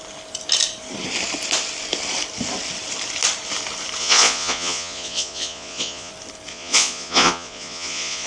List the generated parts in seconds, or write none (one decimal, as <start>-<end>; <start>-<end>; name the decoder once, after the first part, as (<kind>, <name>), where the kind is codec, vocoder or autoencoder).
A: 4.0-6.1 (vocoder, Vocos); 6.5-8.3